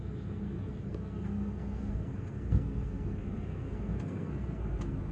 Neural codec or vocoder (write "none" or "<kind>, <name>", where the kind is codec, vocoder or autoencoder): codec, SNAC